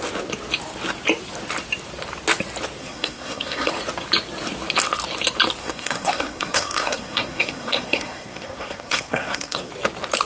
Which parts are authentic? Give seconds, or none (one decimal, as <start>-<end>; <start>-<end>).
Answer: 0.0-2.8; 3.7-5.6; 9.7-10.3

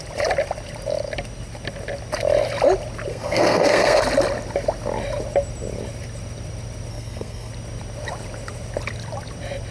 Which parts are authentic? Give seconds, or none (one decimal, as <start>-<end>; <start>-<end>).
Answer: 0.0-3.1; 4.0-6.9; 7.5-9.7

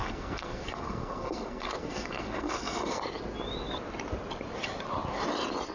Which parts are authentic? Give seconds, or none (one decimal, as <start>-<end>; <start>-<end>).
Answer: 3.0-5.7

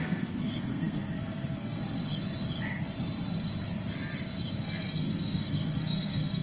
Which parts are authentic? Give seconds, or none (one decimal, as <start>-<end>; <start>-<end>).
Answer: 1.8-4.6